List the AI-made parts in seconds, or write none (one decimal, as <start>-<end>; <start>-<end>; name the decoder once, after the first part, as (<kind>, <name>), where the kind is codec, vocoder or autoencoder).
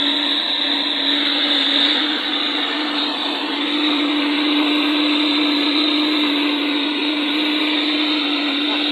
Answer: none